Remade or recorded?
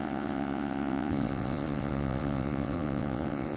remade